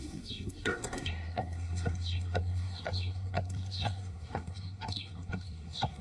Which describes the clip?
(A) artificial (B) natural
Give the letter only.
A